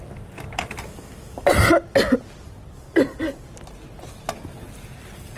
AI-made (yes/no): no